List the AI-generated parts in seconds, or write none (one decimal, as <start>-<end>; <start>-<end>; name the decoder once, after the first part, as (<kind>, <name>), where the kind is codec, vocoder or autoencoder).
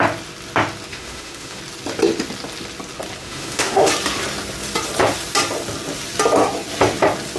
0.9-1.6 (autoencoder, DAC-VAE); 3.2-3.9